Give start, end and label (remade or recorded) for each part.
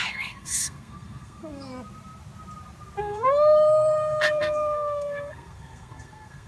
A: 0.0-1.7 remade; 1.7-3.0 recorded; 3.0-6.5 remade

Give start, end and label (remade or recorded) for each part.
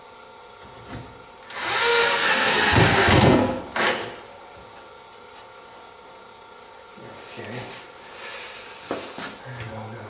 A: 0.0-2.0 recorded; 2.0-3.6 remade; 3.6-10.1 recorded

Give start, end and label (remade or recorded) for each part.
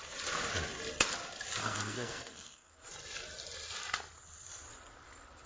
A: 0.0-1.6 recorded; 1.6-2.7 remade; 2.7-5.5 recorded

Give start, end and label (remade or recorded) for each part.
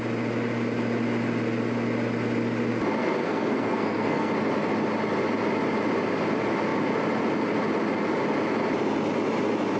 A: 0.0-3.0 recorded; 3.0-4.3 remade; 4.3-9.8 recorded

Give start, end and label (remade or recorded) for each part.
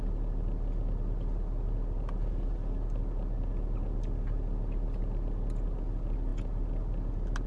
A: 0.0-7.5 recorded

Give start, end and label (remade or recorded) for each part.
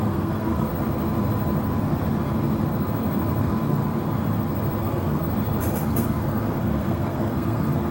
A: 0.0-0.7 remade; 0.7-3.4 recorded; 3.4-3.8 remade; 3.8-4.8 recorded; 4.8-5.2 remade; 5.2-5.8 recorded; 5.8-7.9 remade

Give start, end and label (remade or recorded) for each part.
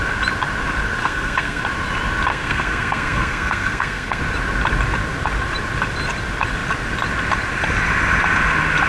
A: 0.0-1.0 recorded; 1.0-1.6 remade; 1.6-2.3 recorded; 2.3-4.2 remade; 4.2-8.9 recorded